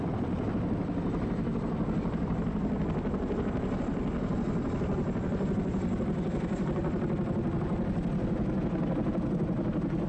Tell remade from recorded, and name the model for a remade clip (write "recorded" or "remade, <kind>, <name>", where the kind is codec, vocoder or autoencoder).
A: recorded